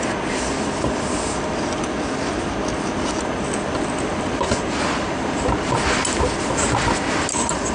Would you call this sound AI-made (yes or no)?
no